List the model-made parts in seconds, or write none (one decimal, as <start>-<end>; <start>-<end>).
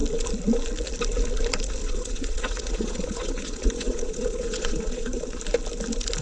1.8-5.4